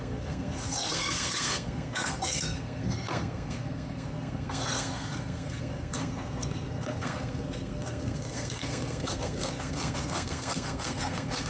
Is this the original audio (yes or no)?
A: no